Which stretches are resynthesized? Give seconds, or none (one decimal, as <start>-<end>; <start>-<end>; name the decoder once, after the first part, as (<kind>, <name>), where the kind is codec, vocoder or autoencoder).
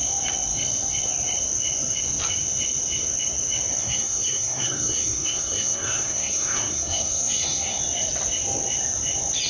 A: 3.8-7.8 (codec, SNAC)